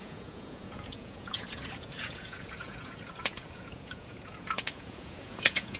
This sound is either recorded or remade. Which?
remade